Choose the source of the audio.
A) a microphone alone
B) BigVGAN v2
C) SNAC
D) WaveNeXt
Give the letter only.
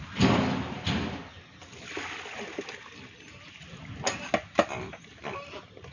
A